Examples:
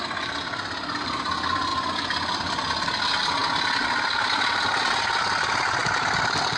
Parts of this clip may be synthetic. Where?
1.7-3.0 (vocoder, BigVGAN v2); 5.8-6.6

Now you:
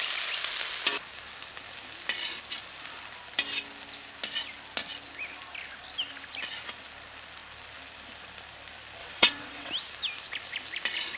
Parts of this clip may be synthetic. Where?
9.0-9.7 (vocoder, WaveNeXt)

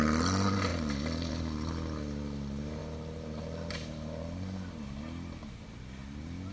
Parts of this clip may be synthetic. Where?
none

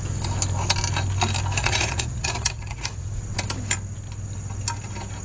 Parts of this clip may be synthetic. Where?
1.6-3.2 (vocoder, Vocos)